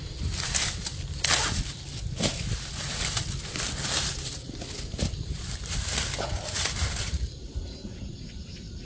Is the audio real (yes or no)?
no